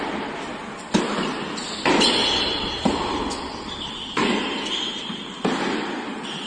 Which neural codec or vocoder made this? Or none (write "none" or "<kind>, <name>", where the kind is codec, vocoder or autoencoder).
none